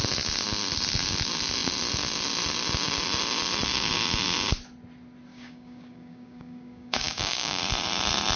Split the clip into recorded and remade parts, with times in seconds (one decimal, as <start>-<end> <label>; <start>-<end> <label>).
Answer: 0.0-5.3 recorded; 5.3-7.6 remade; 7.6-8.4 recorded